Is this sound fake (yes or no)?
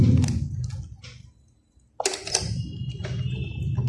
no